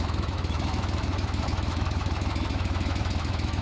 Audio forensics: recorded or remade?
remade